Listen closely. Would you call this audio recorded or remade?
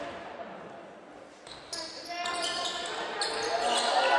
recorded